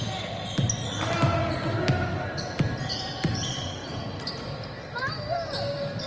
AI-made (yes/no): no